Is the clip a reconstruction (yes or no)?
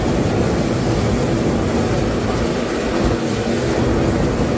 no